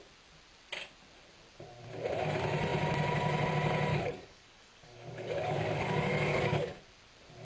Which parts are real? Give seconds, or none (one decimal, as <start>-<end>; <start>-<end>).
0.0-3.9; 6.8-7.4